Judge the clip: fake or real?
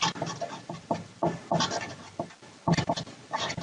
real